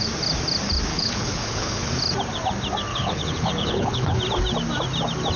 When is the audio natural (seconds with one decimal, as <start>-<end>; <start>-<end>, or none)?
0.0-0.9; 1.9-2.9; 4.2-5.4